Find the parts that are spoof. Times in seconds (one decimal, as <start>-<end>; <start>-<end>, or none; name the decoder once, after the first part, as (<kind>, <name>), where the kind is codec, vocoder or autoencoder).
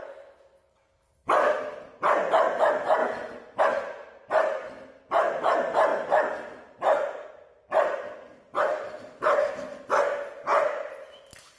none